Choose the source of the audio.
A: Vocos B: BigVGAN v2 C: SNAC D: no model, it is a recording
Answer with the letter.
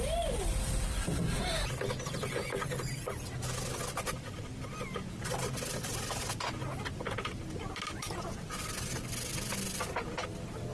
D